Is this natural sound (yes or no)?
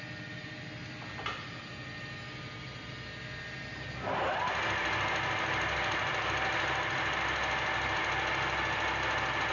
yes